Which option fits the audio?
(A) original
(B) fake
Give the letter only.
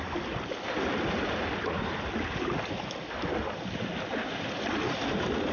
A